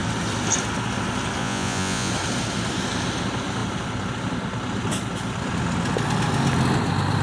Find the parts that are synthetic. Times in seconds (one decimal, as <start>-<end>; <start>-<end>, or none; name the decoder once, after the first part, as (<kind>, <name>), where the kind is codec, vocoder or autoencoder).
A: 1.4-2.1 (vocoder, Vocos)